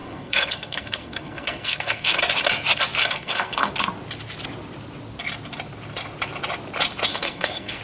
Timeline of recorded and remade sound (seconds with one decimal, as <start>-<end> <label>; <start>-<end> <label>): 0.0-2.2 remade; 2.2-3.0 recorded; 3.0-3.7 remade; 3.7-7.1 recorded; 7.1-7.8 remade

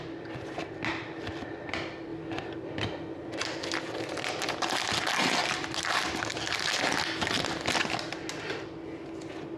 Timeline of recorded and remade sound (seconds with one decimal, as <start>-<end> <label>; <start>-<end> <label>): 0.0-9.6 recorded